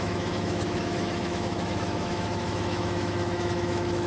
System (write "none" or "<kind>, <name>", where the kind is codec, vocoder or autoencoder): autoencoder, DAC-VAE